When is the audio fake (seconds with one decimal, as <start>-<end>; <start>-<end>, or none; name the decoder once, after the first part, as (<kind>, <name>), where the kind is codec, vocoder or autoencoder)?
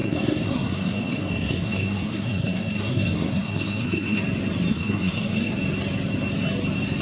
0.0-4.2 (codec, SNAC); 4.7-5.5